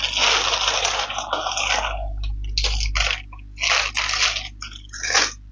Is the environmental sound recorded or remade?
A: recorded